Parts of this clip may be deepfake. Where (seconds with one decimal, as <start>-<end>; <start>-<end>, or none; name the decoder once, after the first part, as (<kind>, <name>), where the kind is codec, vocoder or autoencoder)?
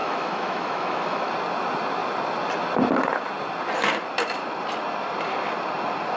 0.0-1.3 (autoencoder, DAC-VAE)